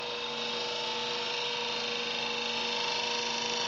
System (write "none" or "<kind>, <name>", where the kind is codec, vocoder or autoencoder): none